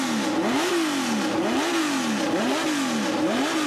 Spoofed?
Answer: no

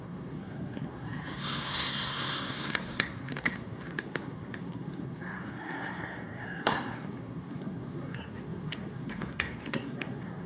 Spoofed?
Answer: yes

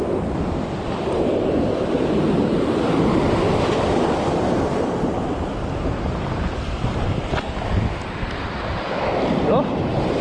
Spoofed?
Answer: no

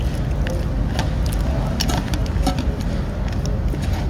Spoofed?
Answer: no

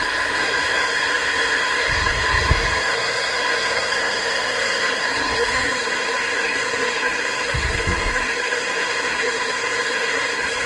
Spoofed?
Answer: yes